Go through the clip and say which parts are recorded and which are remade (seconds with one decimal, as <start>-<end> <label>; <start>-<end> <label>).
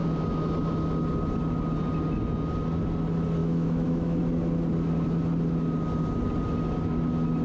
0.0-3.4 recorded; 3.4-4.2 remade; 4.2-7.4 recorded